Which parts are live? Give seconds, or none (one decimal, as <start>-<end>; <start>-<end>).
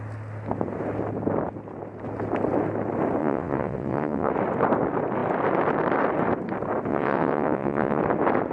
0.0-3.2; 4.3-6.9; 8.0-8.5